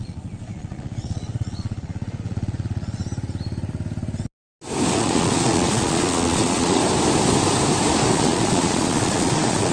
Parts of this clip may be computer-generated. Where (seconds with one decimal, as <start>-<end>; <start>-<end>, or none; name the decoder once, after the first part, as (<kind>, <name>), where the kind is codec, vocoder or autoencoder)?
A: 0.0-3.0 (vocoder, Vocos); 4.9-6.8; 8.1-9.7